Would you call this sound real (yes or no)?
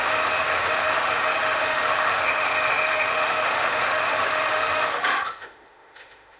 no